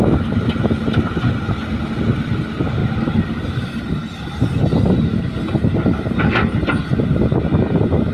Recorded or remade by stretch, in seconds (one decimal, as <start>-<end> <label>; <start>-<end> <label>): 0.0-8.1 recorded